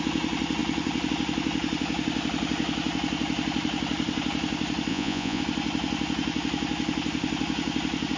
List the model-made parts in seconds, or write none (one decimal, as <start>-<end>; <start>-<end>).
4.9-5.4